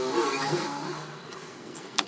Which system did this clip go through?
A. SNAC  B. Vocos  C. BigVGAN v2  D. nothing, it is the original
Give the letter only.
A